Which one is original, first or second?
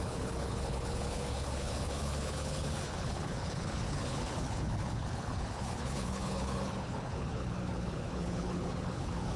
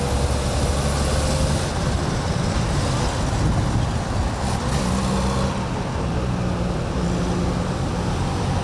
second